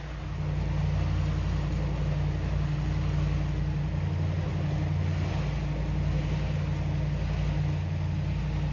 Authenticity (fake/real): real